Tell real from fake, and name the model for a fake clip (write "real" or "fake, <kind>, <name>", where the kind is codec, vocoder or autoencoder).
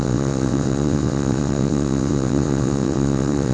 fake, vocoder, WaveNeXt